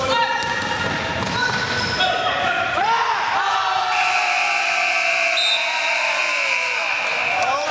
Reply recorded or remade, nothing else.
recorded